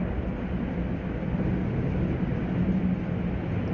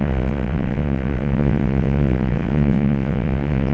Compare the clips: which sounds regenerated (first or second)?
second